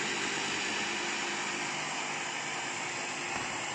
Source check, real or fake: real